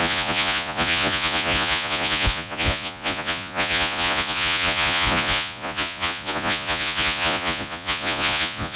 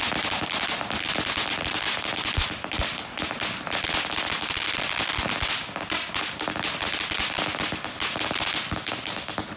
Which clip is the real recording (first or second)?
second